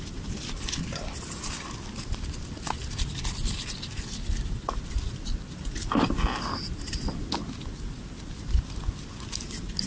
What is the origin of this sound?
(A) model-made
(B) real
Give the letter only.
B